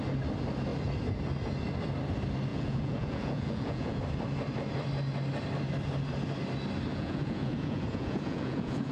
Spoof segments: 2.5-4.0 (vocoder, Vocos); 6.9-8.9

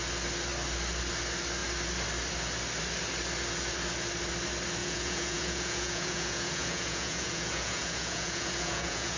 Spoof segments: 4.8-9.2 (vocoder, Vocos)

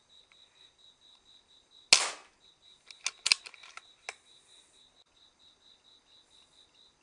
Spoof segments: none

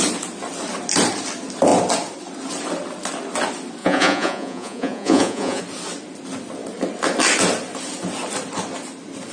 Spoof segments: 3.8-5.6 (vocoder, Vocos)

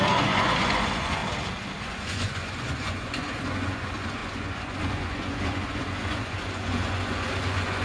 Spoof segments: 0.0-1.2 (vocoder, Vocos); 1.8-7.8